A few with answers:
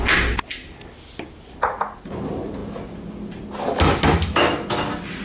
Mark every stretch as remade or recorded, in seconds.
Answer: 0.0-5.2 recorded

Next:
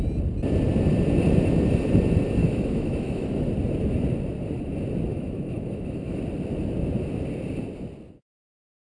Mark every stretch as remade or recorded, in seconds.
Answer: 0.0-2.4 recorded; 2.4-3.5 remade; 3.5-5.1 recorded; 5.1-6.2 remade; 6.2-8.8 recorded

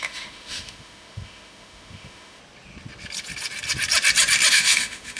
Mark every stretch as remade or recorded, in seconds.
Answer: 0.0-2.4 remade; 2.4-4.5 recorded; 4.5-5.2 remade